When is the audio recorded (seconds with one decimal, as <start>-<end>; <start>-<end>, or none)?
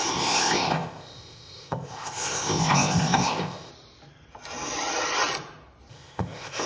3.7-5.9